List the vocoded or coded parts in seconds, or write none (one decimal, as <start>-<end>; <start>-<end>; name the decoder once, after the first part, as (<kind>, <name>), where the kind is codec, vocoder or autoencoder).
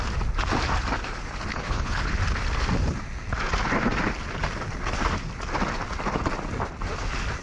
1.5-2.2 (codec, HILCodec)